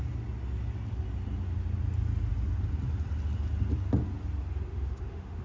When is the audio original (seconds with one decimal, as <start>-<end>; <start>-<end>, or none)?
0.0-4.7